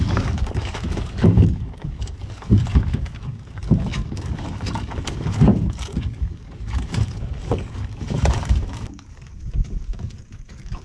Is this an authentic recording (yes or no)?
no